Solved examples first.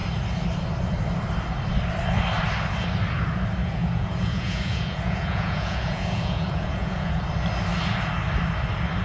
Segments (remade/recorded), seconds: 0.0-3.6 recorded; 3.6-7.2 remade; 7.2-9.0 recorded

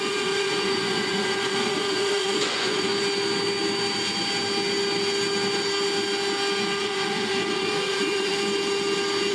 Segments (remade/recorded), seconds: 0.0-2.9 remade; 2.9-6.8 recorded; 6.8-8.3 remade; 8.3-9.3 recorded

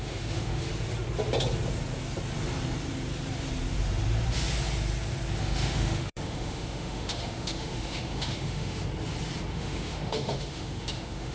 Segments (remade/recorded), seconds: 0.0-0.7 remade; 0.7-5.4 recorded; 5.4-8.8 remade; 8.8-9.5 recorded; 9.5-11.3 remade

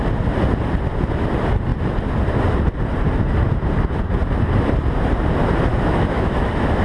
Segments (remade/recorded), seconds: 0.0-5.7 recorded; 5.7-6.8 remade

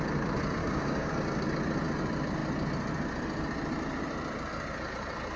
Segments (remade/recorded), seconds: 0.0-0.6 recorded; 0.6-1.1 remade; 1.1-5.4 recorded

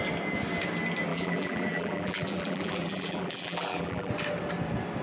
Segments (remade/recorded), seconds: 0.0-1.1 recorded; 1.1-4.1 remade; 4.1-5.0 recorded

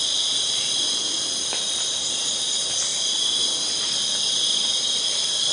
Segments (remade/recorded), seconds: 0.0-5.5 recorded

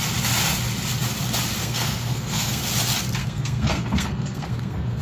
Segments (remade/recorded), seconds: 0.0-1.6 recorded; 1.6-2.6 remade; 2.6-3.2 recorded; 3.2-5.0 remade